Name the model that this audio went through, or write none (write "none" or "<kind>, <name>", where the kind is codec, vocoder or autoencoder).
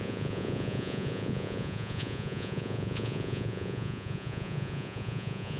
vocoder, Vocos